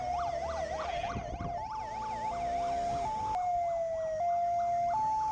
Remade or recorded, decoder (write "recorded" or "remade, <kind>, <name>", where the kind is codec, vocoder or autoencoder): recorded